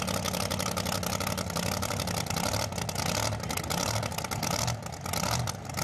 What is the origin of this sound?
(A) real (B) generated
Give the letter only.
A